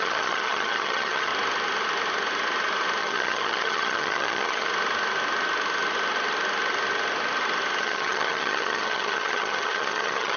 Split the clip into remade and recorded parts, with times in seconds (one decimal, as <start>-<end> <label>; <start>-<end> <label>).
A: 0.0-1.3 remade; 1.3-3.0 recorded; 3.0-4.7 remade; 4.7-7.8 recorded; 7.8-10.4 remade